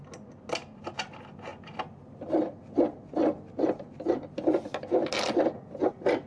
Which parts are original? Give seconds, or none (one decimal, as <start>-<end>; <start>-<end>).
0.0-6.3